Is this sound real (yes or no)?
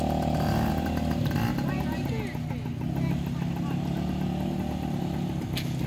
yes